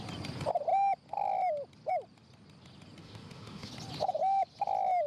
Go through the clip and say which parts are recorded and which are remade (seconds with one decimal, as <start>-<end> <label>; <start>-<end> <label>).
0.0-3.0 recorded; 3.0-3.7 remade; 3.7-5.1 recorded